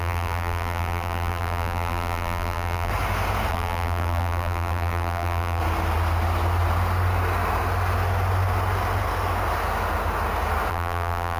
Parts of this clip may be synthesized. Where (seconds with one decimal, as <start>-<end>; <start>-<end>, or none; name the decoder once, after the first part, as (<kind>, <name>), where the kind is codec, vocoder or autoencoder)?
0.0-2.9 (vocoder, BigVGAN v2); 3.5-5.6; 10.7-11.4